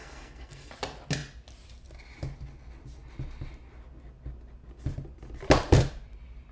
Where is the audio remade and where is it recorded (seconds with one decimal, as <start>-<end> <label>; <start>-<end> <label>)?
0.0-0.7 remade; 0.7-6.5 recorded